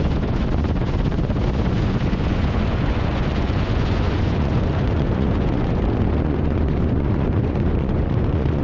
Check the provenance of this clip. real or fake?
fake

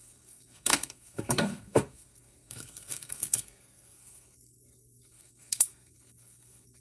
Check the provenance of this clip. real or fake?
fake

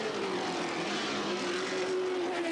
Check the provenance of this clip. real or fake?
real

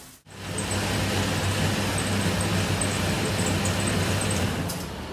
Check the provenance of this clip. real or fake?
real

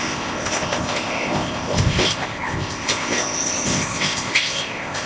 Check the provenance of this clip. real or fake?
fake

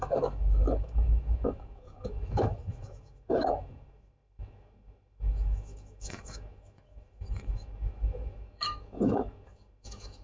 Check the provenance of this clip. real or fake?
fake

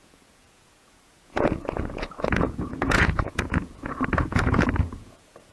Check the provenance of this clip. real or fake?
fake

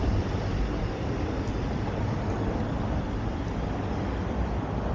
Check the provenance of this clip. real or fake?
real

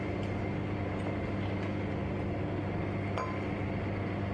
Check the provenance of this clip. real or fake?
real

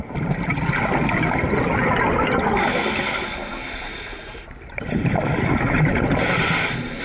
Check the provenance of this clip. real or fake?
real